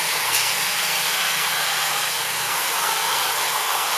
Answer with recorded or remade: remade